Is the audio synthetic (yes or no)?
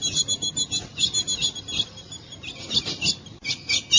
no